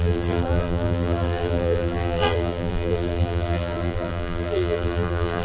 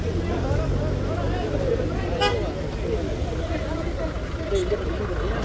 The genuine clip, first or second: second